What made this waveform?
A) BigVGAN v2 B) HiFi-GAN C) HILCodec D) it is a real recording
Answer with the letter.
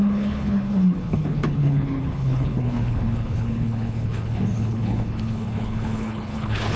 C